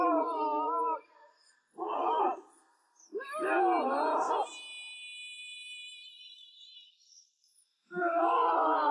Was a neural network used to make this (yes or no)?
no